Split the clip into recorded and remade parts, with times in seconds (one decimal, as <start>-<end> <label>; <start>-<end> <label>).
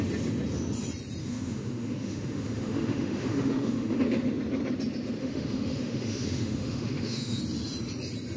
0.0-1.2 recorded; 1.2-4.0 remade; 4.0-5.2 recorded; 5.2-7.4 remade; 7.4-8.4 recorded